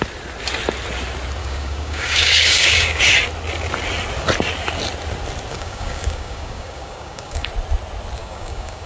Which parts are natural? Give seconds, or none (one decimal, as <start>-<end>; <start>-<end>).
0.0-1.4; 3.0-5.5; 7.5-8.2